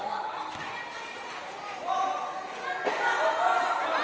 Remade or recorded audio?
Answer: recorded